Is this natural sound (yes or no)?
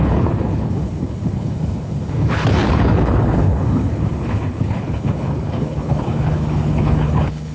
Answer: no